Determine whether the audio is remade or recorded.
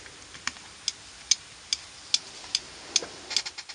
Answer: recorded